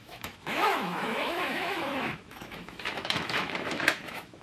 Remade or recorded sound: remade